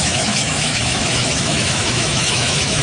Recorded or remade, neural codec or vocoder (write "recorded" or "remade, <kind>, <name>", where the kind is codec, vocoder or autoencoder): remade, autoencoder, DAC-VAE